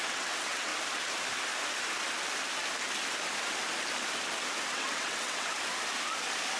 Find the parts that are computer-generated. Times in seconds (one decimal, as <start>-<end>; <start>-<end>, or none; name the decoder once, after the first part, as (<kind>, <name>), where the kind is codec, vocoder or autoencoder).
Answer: 0.0-0.7 (vocoder, WaveNeXt); 4.7-5.5